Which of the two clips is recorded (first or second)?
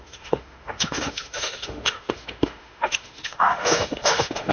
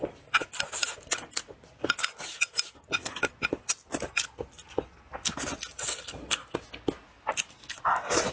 second